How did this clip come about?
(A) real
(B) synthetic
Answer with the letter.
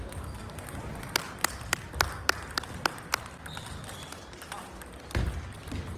A